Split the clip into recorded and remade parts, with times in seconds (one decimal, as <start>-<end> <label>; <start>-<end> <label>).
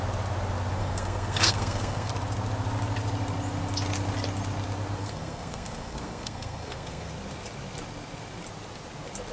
0.0-0.8 recorded; 0.8-2.1 remade; 2.1-5.0 recorded; 5.0-7.1 remade; 7.1-9.3 recorded